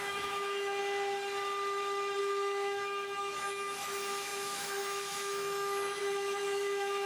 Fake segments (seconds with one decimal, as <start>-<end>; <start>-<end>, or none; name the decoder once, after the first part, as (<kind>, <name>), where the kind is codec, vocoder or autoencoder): 0.0-0.8 (autoencoder, DAC-VAE); 2.2-7.1